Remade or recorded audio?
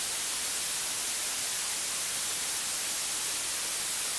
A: recorded